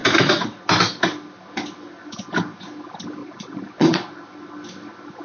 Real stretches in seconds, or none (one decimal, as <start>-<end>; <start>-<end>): 0.0-3.2; 4.2-5.2